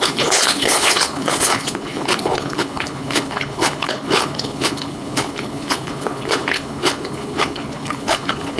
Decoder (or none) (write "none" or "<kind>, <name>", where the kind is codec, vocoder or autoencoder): codec, HILCodec